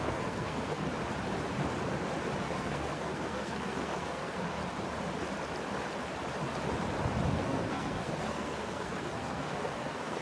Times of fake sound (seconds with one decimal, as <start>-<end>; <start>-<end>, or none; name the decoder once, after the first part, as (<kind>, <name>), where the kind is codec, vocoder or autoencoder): 0.0-0.9 (codec, SNAC); 2.4-4.6; 7.3-10.2